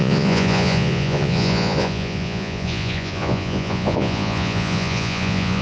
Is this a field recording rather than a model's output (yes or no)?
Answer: no